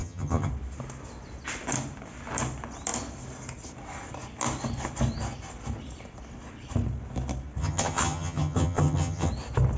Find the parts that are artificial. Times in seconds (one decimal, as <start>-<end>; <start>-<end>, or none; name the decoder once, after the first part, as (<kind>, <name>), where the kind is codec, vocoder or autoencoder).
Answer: 0.0-0.5 (vocoder, HiFi-GAN); 7.6-9.3